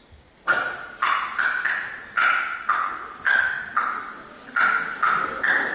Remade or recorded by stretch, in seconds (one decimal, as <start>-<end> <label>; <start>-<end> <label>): 0.0-2.8 recorded; 2.8-3.5 remade; 3.5-5.7 recorded